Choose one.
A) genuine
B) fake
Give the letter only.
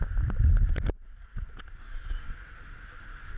A